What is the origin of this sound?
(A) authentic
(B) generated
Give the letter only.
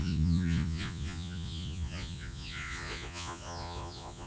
B